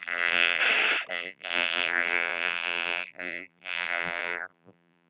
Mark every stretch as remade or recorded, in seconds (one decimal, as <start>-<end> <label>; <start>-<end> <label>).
0.0-0.6 remade; 0.6-1.1 recorded; 1.1-5.1 remade

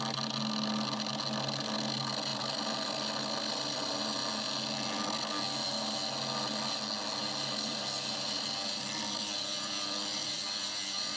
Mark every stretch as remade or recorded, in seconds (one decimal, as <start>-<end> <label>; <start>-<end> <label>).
0.0-2.3 recorded; 2.3-2.9 remade; 2.9-7.2 recorded; 7.2-11.2 remade

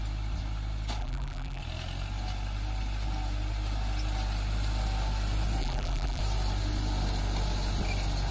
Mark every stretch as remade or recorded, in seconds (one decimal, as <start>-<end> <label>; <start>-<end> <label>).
0.0-1.0 recorded; 1.0-1.6 remade; 1.6-5.6 recorded; 5.6-6.2 remade; 6.2-8.3 recorded

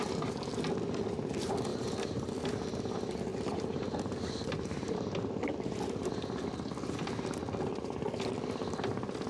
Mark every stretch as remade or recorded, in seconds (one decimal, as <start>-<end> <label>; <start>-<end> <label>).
0.0-1.7 recorded; 1.7-2.3 remade; 2.3-3.3 recorded; 3.3-6.1 remade; 6.1-9.3 recorded